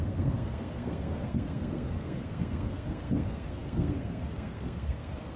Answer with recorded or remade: remade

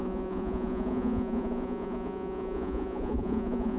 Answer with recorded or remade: remade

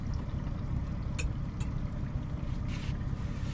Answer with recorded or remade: recorded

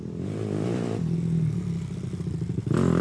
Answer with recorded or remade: recorded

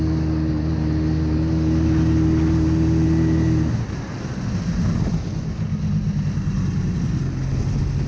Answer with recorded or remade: recorded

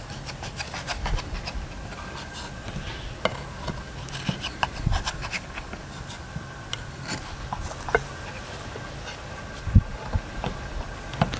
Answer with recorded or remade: recorded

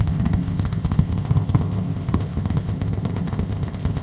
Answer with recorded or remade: remade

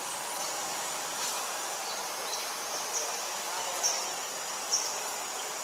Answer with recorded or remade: recorded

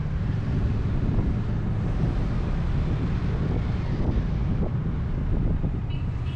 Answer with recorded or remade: recorded